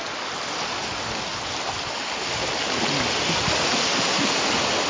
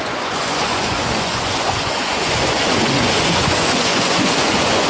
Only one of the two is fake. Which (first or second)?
second